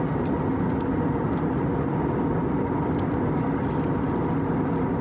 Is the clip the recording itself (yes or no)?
yes